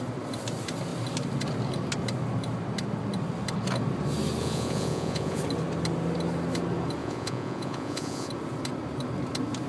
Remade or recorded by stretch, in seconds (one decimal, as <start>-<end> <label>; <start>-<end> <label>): 0.0-4.4 recorded; 4.4-5.4 remade; 5.4-7.0 recorded; 7.0-8.3 remade; 8.3-9.7 recorded